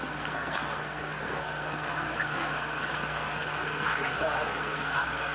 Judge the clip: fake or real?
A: fake